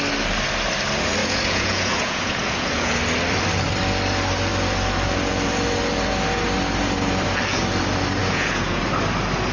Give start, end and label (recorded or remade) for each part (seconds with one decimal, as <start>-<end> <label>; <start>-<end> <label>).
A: 0.0-1.2 recorded; 1.2-3.0 remade; 3.0-8.2 recorded; 8.2-8.8 remade; 8.8-9.5 recorded